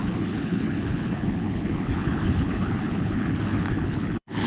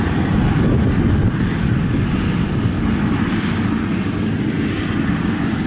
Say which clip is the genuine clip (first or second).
second